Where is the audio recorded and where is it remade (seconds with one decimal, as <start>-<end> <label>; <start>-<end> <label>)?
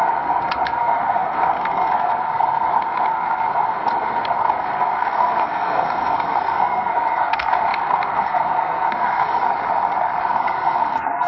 0.0-9.4 remade; 9.4-10.2 recorded; 10.2-11.3 remade